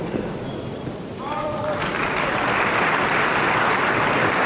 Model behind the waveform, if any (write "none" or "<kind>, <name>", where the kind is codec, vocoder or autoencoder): vocoder, BigVGAN v2